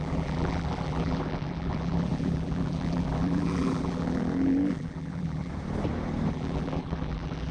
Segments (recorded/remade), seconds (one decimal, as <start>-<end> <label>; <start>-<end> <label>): 0.0-5.5 remade; 5.5-6.3 recorded; 6.3-7.5 remade

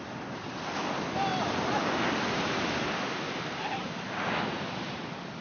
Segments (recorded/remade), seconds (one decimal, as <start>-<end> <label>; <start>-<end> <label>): 0.0-5.4 recorded